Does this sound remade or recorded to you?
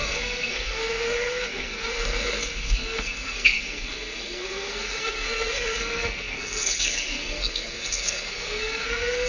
remade